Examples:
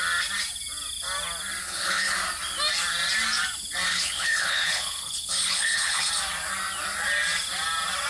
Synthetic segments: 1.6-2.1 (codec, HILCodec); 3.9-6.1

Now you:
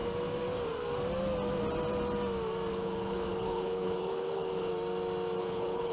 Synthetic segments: 2.7-4.7 (codec, HILCodec); 5.4-5.9